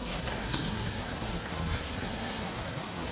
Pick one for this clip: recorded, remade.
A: remade